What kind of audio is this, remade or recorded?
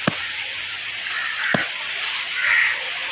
recorded